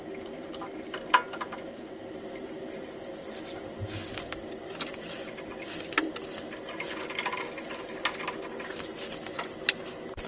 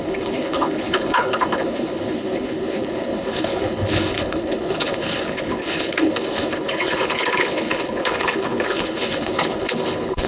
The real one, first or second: first